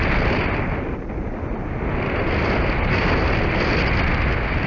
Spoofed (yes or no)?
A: no